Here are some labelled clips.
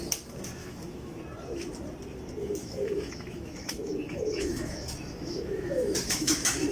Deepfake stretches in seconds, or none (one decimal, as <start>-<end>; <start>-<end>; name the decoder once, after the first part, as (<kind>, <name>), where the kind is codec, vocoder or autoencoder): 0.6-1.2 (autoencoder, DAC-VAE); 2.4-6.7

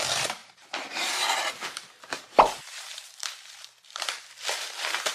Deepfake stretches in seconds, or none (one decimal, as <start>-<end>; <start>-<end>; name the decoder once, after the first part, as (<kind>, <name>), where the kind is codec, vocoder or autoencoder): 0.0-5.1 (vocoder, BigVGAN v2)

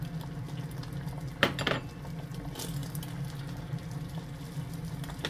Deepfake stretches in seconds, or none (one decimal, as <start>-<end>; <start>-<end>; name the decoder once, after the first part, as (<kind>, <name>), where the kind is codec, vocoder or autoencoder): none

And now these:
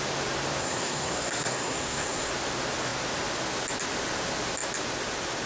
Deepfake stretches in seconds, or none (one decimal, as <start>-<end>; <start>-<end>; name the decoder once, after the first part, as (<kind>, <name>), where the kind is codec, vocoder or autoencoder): 0.6-2.3 (codec, SNAC)

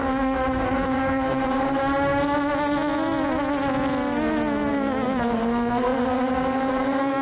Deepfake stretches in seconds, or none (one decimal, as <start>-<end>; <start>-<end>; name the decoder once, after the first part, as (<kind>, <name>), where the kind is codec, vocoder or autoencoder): 0.0-1.8 (codec, SNAC); 4.7-7.2

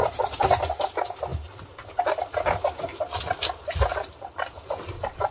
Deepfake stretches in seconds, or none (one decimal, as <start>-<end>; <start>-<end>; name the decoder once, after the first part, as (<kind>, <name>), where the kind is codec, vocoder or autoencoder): 0.0-0.9 (vocoder, BigVGAN v2)

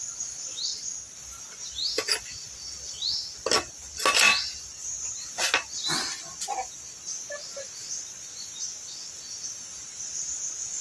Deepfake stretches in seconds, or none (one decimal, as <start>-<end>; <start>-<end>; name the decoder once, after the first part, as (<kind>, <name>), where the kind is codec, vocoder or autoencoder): none

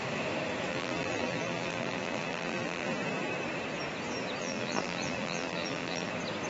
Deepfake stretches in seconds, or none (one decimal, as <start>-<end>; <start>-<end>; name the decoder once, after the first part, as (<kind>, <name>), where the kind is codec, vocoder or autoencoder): 0.7-2.9 (vocoder, BigVGAN v2); 4.4-6.1